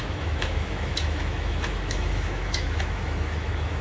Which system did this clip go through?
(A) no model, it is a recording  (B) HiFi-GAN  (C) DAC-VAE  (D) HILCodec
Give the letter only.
C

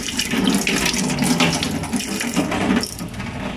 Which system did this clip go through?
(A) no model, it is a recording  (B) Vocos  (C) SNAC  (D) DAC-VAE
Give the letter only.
A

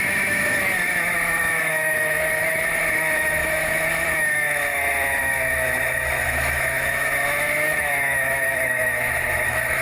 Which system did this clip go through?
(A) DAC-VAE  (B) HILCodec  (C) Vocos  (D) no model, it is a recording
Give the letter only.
A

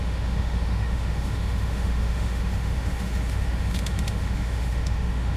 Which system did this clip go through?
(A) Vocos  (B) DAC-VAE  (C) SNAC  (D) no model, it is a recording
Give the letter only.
B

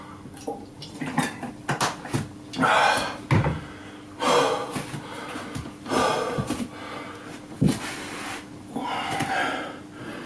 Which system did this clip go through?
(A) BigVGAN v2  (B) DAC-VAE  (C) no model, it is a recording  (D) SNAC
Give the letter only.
C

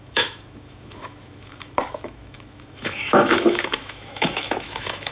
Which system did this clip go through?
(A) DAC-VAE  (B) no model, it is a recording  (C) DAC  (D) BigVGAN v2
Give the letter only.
A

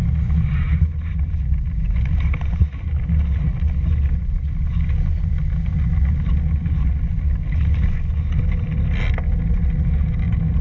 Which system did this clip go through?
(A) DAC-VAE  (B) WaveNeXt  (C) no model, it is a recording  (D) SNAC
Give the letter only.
C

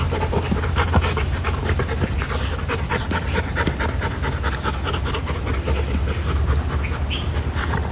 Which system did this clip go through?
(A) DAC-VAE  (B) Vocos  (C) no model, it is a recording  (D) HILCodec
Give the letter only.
C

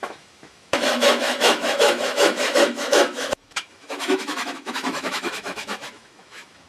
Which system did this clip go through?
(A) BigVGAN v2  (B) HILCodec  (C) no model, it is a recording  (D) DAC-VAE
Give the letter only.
D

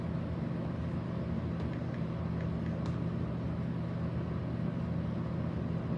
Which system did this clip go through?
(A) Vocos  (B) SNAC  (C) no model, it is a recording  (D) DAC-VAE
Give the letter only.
C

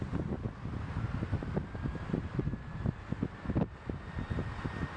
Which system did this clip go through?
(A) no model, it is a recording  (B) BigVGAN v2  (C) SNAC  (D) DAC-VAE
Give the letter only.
A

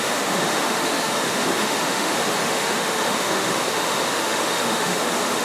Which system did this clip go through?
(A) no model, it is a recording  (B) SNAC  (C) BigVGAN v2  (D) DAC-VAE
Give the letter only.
D